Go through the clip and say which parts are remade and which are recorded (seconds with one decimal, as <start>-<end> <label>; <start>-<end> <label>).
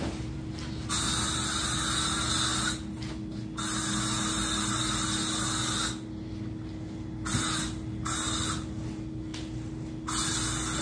0.0-10.8 recorded